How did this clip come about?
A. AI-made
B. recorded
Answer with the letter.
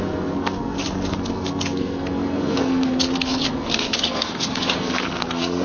A